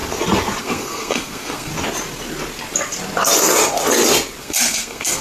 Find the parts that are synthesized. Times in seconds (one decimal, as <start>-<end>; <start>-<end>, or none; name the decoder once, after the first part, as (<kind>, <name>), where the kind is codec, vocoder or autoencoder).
0.6-1.7 (codec, SNAC); 4.4-5.2